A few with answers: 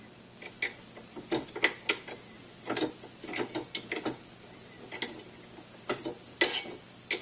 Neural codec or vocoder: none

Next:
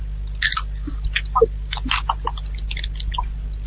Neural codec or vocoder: none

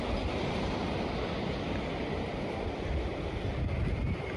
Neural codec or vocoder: none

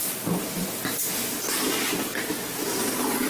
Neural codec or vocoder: none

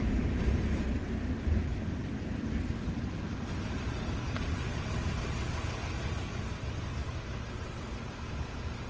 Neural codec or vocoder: vocoder, BigVGAN v2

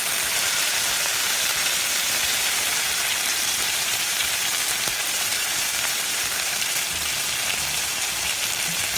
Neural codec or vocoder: vocoder, BigVGAN v2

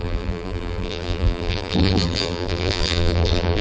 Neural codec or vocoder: vocoder, BigVGAN v2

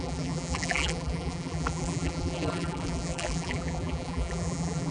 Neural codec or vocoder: vocoder, BigVGAN v2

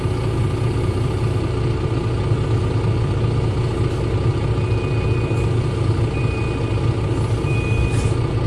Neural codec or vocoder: none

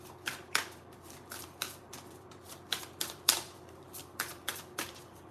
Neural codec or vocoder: vocoder, BigVGAN v2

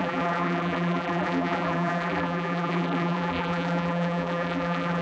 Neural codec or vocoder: vocoder, BigVGAN v2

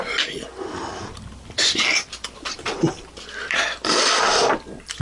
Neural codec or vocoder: vocoder, BigVGAN v2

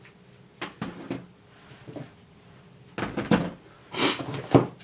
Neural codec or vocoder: none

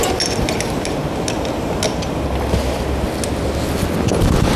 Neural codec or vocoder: none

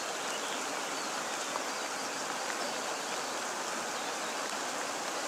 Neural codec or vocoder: none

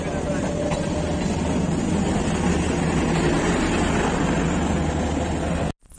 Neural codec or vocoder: none